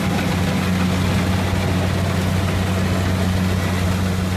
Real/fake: real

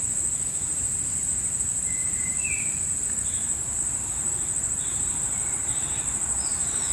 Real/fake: fake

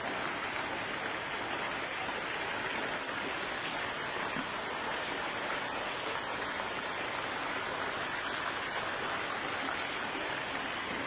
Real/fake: real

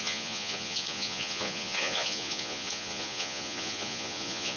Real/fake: fake